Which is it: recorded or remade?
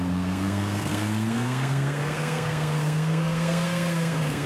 remade